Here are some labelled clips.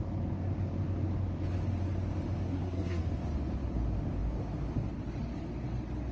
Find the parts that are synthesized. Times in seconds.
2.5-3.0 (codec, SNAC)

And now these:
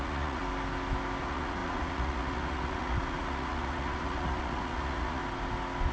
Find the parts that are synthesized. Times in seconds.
0.0-0.4 (vocoder, Vocos); 1.2-5.2

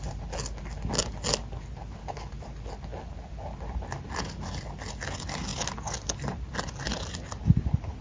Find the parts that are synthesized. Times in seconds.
none

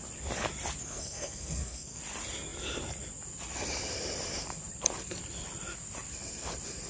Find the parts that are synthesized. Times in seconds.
0.8-2.0 (codec, SNAC)

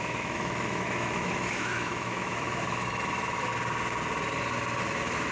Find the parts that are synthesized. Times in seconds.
0.0-3.5 (autoencoder, DAC-VAE); 4.8-5.3

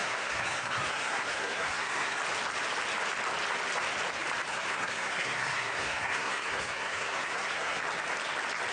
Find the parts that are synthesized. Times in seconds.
0.0-2.2 (codec, SNAC); 4.5-7.8